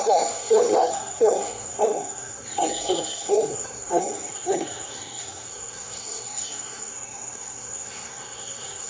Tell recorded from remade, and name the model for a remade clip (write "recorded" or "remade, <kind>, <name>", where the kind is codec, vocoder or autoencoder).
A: remade, codec, SNAC